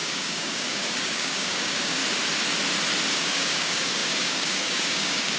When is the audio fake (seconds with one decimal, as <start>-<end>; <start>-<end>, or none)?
0.0-2.0; 3.1-5.4